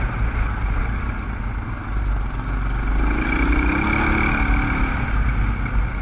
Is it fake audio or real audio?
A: real